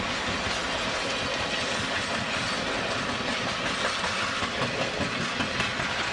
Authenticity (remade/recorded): recorded